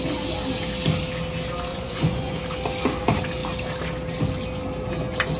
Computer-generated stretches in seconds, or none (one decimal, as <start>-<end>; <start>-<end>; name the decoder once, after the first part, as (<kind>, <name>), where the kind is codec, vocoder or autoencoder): 1.7-2.4 (vocoder, Vocos)